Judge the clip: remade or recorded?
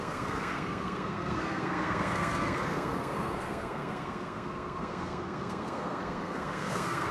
remade